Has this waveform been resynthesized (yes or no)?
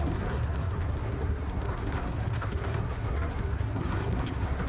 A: yes